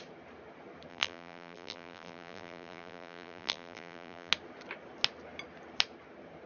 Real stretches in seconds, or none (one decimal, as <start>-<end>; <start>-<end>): 0.0-0.9; 4.3-6.5